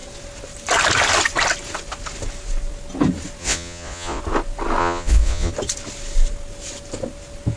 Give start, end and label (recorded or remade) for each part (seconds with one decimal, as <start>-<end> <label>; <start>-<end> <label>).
0.0-3.4 recorded; 3.4-4.2 remade; 4.2-4.8 recorded; 4.8-5.5 remade; 5.5-7.6 recorded